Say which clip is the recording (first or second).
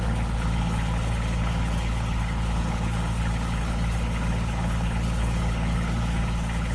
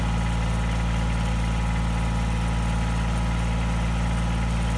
second